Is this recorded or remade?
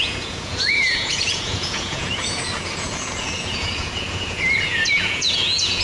remade